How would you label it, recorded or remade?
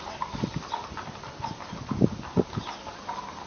recorded